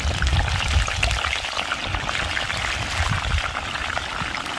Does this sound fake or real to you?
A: real